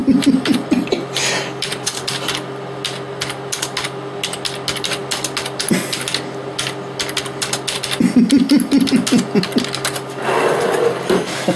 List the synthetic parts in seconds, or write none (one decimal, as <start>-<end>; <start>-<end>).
0.0-2.1